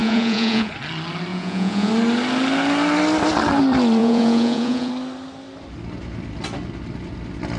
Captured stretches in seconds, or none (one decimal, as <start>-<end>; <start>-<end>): 0.7-1.3; 1.9-4.0; 4.9-7.6